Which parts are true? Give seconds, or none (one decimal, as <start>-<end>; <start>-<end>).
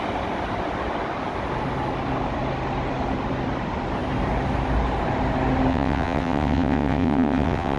0.0-5.7